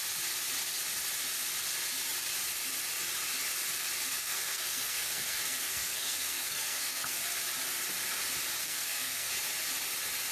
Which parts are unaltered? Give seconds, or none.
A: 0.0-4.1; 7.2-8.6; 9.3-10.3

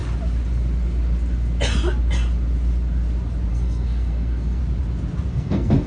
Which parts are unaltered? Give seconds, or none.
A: 0.0-3.5; 4.6-5.3

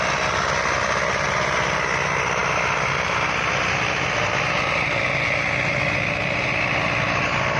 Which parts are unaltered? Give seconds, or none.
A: 0.0-7.6

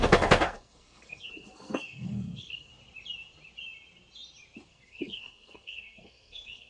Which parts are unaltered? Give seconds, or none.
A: 2.7-4.7